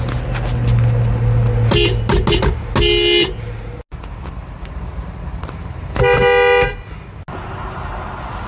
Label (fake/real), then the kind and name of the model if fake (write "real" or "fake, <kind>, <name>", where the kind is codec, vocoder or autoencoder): real